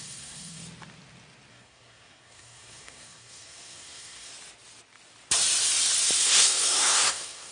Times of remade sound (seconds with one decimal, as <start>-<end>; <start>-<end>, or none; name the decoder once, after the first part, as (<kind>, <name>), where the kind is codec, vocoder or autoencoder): 0.0-0.6 (codec, SNAC); 1.5-4.3; 6.2-7.5